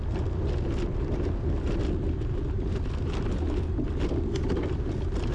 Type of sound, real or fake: real